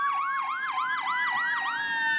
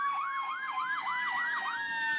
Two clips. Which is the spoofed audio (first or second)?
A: second